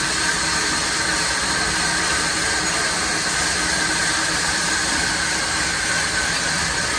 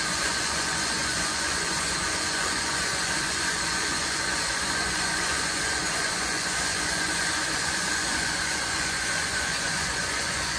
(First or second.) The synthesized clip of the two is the second